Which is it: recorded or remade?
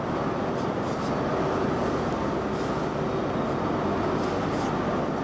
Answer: recorded